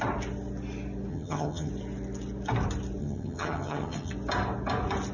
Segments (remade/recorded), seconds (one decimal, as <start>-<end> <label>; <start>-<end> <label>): 0.0-1.1 recorded; 1.1-1.7 remade; 1.7-3.0 recorded; 3.0-4.1 remade; 4.1-5.1 recorded